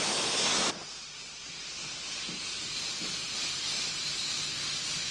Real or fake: real